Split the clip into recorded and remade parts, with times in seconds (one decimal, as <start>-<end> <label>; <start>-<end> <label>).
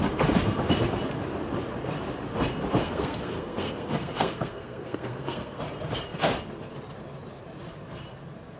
0.0-2.8 recorded; 2.8-5.6 remade; 5.6-8.6 recorded